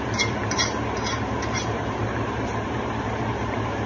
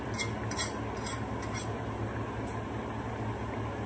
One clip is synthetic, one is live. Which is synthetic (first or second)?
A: first